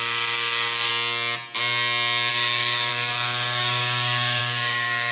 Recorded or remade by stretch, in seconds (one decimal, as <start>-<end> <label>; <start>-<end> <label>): 0.0-0.9 remade; 0.9-2.3 recorded; 2.3-5.1 remade